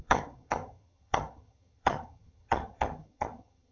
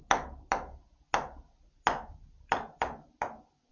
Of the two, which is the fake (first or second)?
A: first